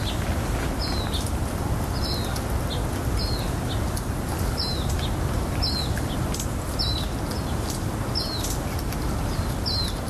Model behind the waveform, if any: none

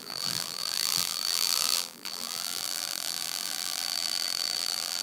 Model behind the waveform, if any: vocoder, BigVGAN v2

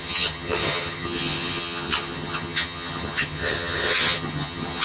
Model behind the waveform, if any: vocoder, HiFi-GAN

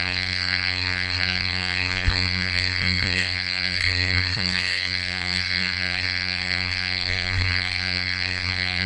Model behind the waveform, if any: codec, SNAC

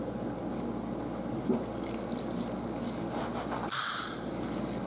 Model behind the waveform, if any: none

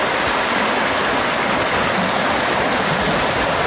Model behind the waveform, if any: none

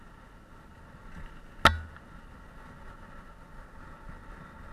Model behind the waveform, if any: none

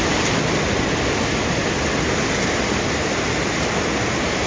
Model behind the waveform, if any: none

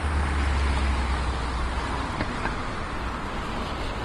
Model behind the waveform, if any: none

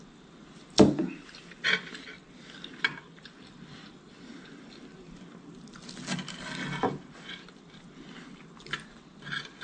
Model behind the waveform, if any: none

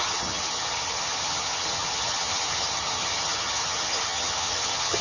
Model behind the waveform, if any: vocoder, HiFi-GAN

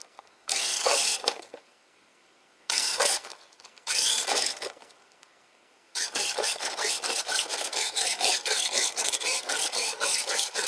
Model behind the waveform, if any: codec, SNAC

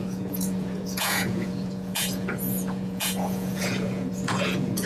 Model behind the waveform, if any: vocoder, Vocos